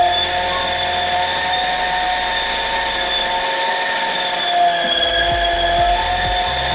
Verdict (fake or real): real